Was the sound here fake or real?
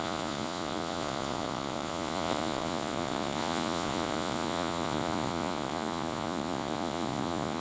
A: fake